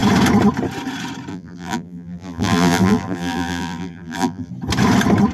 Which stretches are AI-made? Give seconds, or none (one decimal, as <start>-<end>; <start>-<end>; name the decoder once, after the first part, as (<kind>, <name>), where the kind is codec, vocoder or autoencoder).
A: 1.3-4.5 (vocoder, BigVGAN v2)